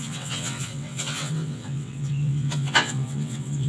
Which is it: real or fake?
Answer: fake